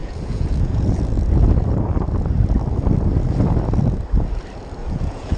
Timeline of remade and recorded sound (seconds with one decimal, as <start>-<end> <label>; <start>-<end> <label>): 0.0-1.0 remade; 1.0-4.8 recorded; 4.8-5.4 remade